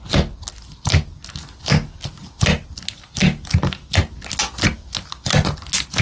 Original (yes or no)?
yes